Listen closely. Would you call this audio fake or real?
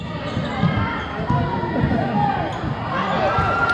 real